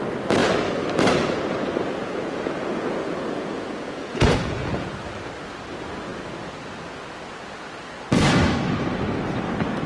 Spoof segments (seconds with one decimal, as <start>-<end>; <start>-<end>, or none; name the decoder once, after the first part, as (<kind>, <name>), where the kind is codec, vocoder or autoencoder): 2.0-4.9 (vocoder, Vocos)

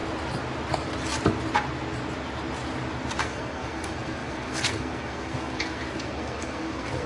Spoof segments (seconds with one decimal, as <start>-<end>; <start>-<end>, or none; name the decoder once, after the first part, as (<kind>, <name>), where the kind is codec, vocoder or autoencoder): 3.2-7.1 (codec, SNAC)